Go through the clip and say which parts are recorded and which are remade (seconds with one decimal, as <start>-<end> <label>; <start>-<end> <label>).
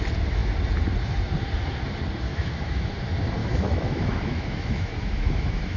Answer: 0.0-2.3 recorded; 2.3-2.9 remade; 2.9-3.4 recorded; 3.4-5.8 remade